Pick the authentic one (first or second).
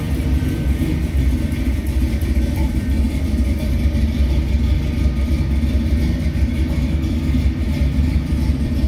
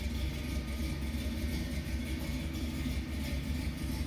second